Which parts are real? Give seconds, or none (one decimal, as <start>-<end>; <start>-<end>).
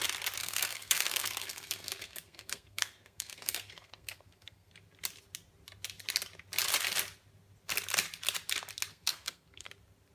0.0-0.4; 4.7-8.9; 9.7-10.1